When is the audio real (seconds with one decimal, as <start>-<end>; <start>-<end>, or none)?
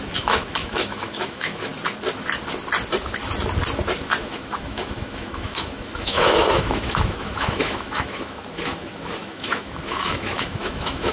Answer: 1.7-4.2